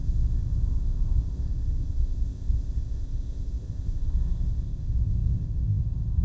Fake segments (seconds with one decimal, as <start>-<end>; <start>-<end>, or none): 0.0-6.2